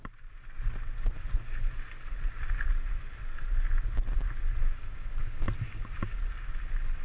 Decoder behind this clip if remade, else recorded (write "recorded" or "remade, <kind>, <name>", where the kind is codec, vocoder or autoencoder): recorded